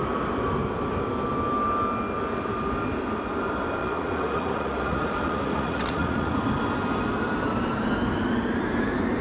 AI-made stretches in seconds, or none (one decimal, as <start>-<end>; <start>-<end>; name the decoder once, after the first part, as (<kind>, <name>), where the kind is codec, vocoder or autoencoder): 3.8-6.4 (vocoder, Vocos)